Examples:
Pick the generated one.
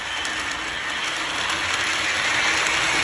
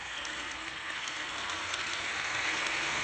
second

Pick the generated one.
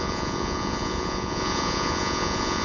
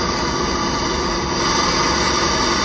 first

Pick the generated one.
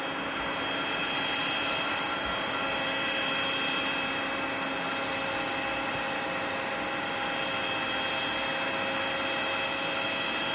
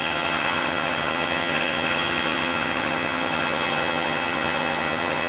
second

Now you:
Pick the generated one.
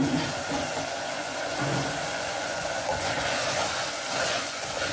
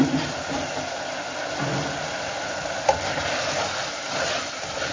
first